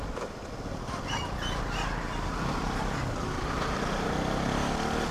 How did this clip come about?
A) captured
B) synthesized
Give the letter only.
A